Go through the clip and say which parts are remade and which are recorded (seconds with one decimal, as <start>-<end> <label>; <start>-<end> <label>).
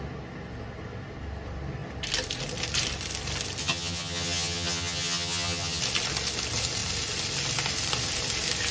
0.0-3.6 recorded; 3.6-5.8 remade; 5.8-8.7 recorded